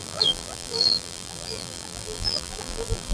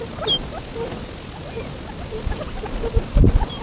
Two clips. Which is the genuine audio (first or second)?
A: second